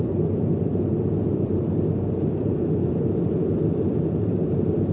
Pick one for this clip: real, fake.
fake